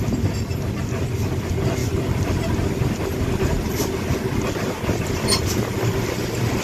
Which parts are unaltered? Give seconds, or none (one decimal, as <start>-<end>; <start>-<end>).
none

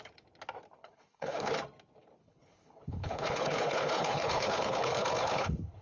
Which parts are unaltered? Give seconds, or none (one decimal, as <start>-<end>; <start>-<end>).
0.0-0.8; 1.5-2.2